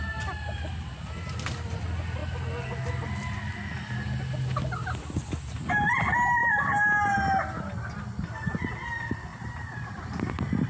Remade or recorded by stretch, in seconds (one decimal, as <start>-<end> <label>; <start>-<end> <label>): 0.0-9.3 recorded; 9.3-9.9 remade; 9.9-10.7 recorded

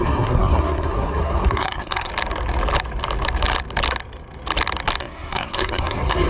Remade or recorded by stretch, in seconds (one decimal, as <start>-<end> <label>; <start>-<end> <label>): 0.0-2.1 remade; 2.1-5.0 recorded; 5.0-6.3 remade

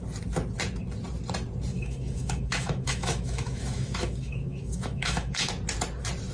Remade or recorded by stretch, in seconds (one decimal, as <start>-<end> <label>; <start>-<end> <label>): 0.0-1.7 recorded; 1.7-5.5 remade; 5.5-6.3 recorded

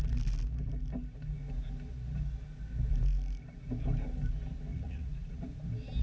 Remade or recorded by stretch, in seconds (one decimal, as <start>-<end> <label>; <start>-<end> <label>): 0.0-4.7 recorded; 4.7-5.4 remade; 5.4-6.0 recorded